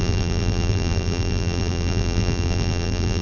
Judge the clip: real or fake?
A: fake